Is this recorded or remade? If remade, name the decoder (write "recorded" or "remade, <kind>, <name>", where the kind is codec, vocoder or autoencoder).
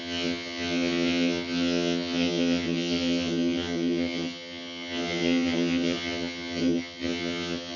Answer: remade, vocoder, HiFi-GAN